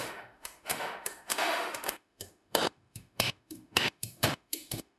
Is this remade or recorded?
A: remade